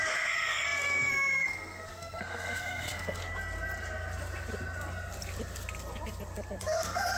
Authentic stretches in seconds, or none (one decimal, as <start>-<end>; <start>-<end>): 3.2-6.6